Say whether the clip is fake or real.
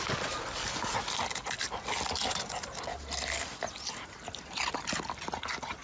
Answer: real